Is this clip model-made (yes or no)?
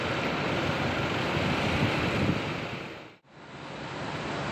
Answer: no